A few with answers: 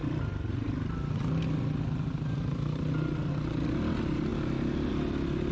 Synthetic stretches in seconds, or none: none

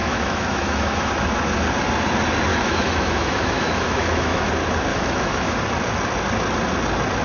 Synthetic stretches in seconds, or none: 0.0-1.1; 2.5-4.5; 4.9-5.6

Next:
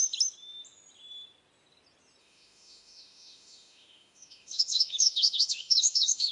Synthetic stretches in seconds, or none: 2.2-6.3

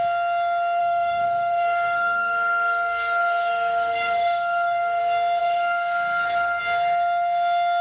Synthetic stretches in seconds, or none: 0.8-5.0; 5.4-6.6

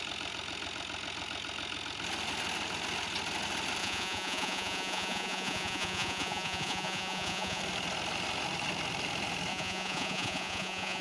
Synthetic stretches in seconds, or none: 3.8-7.6; 9.5-11.0

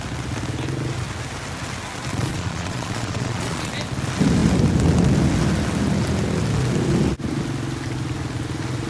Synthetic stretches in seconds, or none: 2.1-3.7